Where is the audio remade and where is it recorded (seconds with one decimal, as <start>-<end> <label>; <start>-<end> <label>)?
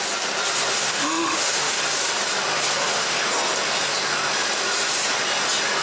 0.0-0.7 recorded; 0.7-1.8 remade; 1.8-2.8 recorded; 2.8-3.3 remade; 3.3-5.8 recorded